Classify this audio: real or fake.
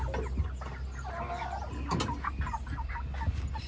real